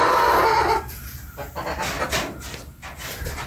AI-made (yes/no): no